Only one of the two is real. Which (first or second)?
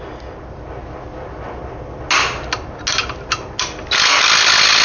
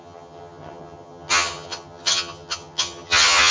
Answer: first